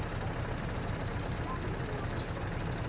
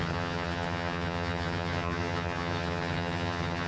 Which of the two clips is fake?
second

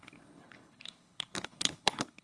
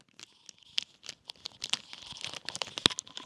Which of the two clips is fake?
first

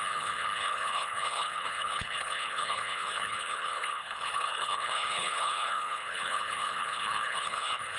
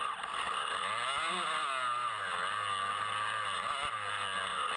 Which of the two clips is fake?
first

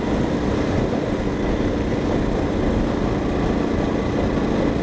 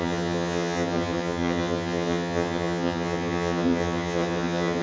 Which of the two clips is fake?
second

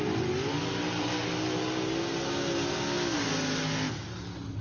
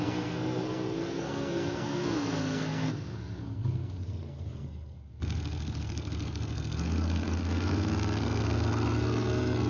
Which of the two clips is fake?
second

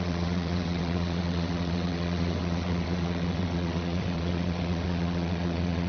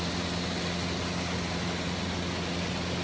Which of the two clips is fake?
first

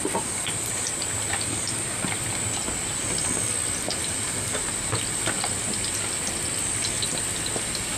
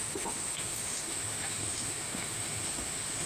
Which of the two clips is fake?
second